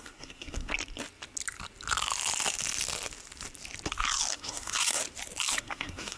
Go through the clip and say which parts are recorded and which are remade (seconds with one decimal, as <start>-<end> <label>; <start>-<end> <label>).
0.0-0.7 remade; 0.7-4.3 recorded; 4.3-5.0 remade; 5.0-5.6 recorded; 5.6-6.2 remade